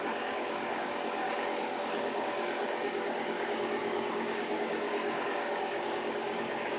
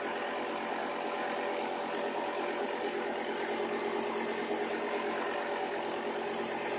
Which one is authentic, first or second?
second